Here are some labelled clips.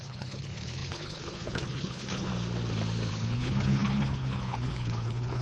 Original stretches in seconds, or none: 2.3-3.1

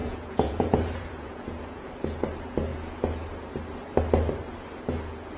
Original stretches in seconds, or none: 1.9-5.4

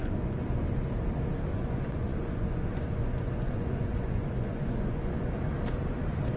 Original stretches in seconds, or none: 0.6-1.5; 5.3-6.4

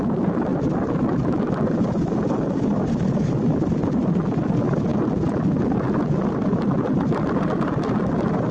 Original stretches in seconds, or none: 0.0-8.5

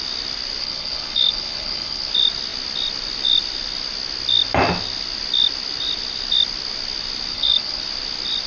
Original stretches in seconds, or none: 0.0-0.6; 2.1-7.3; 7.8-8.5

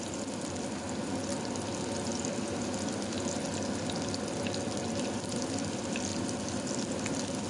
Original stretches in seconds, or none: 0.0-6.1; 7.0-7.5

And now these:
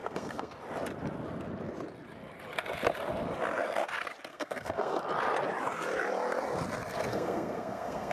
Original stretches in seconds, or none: 0.5-4.3; 5.0-7.1

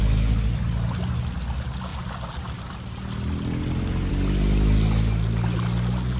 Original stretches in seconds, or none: 0.0-6.2